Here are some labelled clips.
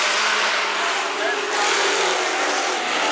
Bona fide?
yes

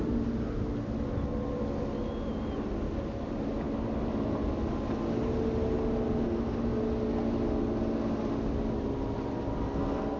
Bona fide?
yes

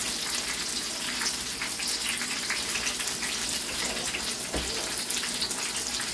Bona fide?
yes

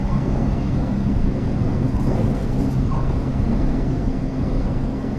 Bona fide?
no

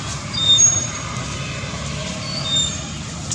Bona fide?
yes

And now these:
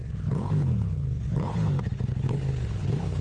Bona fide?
no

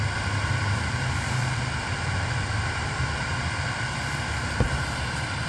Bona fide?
no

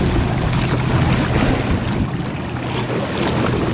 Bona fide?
yes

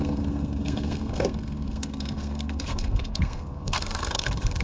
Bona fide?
no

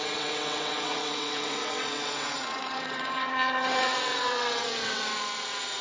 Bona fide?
no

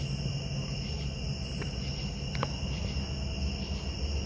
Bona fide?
yes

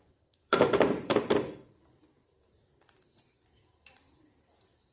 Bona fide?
no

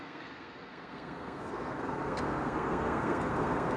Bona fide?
no